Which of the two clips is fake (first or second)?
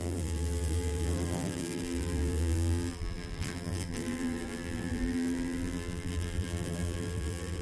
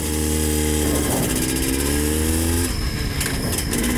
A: first